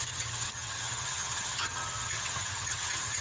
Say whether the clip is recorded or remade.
remade